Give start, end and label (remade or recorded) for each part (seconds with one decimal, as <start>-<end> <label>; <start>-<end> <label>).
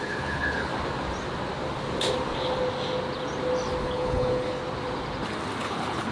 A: 0.0-0.7 remade; 0.7-3.8 recorded; 3.8-4.6 remade; 4.6-5.6 recorded; 5.6-6.1 remade